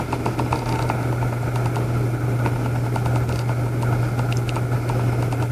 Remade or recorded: recorded